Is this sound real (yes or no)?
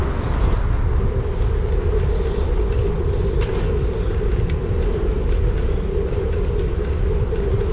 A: yes